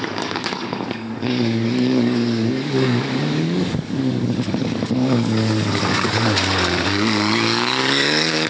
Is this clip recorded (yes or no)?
no